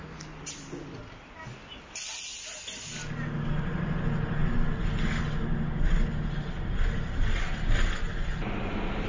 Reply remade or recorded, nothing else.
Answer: recorded